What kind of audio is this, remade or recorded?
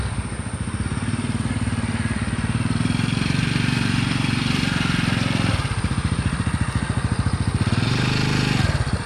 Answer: remade